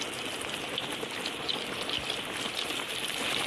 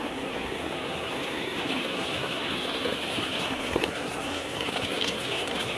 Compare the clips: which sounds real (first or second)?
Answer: first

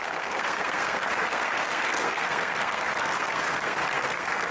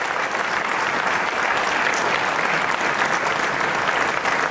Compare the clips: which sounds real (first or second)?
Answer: second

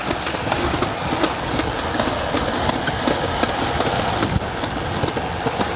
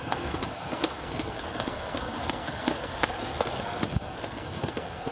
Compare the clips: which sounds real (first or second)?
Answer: first